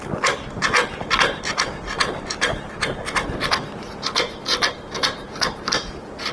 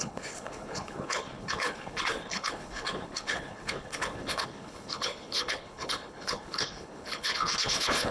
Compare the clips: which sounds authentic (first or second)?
first